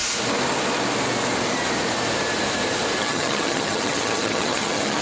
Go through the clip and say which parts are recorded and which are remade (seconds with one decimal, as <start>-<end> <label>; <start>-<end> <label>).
0.0-3.0 recorded; 3.0-5.0 remade